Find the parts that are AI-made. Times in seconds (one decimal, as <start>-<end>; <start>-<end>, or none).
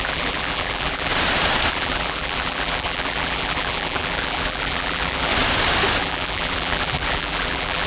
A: 0.0-1.1; 1.7-5.3; 6.0-7.9